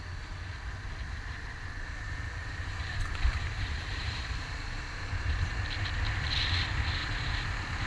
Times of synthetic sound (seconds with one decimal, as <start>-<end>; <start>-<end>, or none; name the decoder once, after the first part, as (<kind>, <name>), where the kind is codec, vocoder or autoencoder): 2.4-5.6 (vocoder, BigVGAN v2); 7.0-7.9